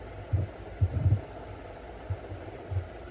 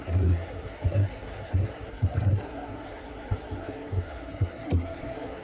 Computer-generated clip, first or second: second